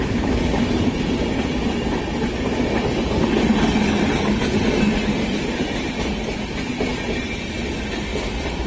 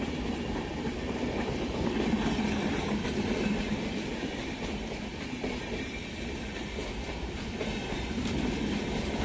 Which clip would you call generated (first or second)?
second